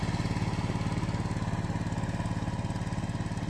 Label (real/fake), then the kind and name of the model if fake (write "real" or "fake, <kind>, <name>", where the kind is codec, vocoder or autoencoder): real